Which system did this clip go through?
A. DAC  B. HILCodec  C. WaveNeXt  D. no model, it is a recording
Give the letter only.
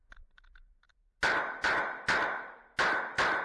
D